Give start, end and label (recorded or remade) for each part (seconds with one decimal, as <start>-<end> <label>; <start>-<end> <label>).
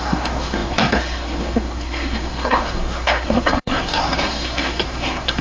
0.0-5.4 remade